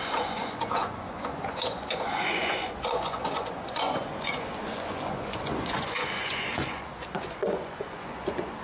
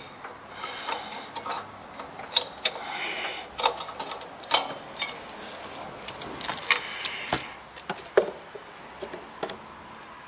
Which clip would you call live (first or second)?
second